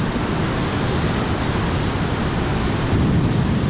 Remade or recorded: recorded